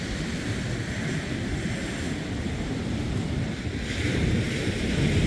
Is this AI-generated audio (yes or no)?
no